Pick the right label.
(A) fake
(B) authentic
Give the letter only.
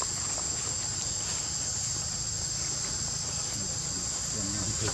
B